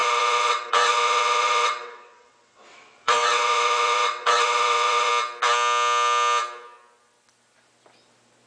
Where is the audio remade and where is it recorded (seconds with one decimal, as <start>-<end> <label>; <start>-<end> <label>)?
0.0-5.1 remade; 5.1-8.5 recorded